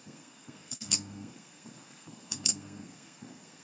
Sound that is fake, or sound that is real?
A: fake